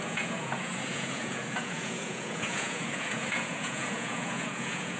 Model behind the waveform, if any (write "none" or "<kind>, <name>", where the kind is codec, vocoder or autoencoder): vocoder, Vocos